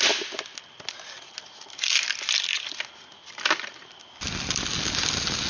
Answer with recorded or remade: recorded